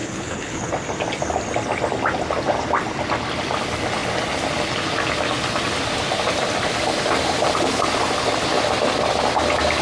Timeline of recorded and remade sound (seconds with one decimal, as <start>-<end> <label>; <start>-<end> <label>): 0.0-0.7 remade; 0.7-9.8 recorded